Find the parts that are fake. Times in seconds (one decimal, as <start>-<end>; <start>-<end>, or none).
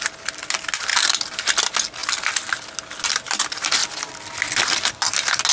none